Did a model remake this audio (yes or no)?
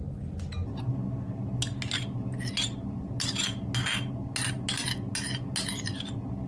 no